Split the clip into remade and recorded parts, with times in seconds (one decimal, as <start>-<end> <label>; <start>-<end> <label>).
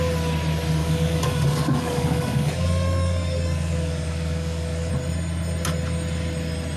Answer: 0.0-0.8 recorded; 0.8-4.9 remade; 4.9-6.8 recorded